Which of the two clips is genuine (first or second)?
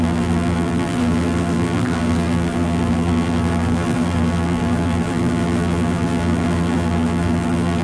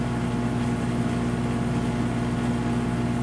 second